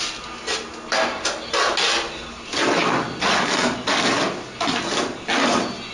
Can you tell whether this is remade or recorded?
recorded